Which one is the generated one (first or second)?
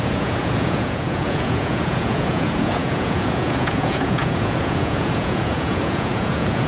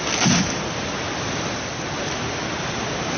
first